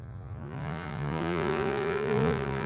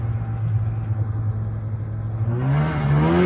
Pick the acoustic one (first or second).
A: second